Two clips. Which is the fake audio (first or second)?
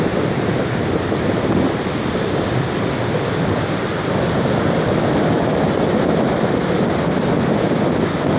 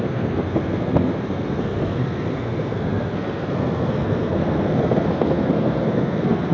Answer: second